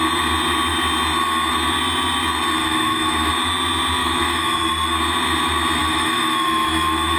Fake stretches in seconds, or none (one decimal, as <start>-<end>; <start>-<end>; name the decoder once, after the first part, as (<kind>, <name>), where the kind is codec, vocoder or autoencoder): 2.6-3.3 (autoencoder, DAC-VAE); 4.0-4.7; 5.8-7.2